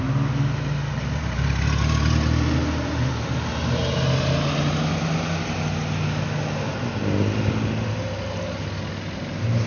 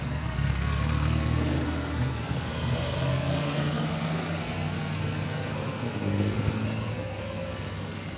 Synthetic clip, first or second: second